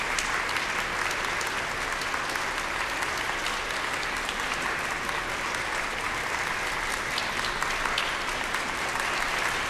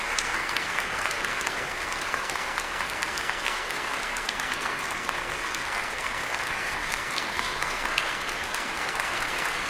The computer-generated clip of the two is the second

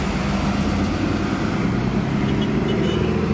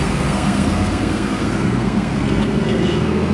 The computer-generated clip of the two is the second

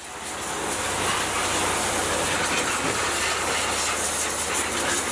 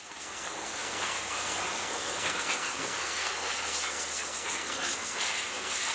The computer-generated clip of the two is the second